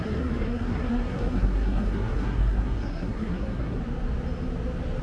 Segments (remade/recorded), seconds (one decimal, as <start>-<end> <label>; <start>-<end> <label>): 0.0-3.8 remade; 3.8-5.0 recorded